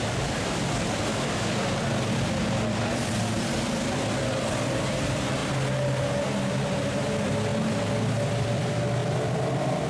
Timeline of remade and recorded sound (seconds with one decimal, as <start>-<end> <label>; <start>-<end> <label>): 0.0-5.4 remade; 5.4-6.0 recorded; 6.0-7.5 remade; 7.5-8.3 recorded; 8.3-9.9 remade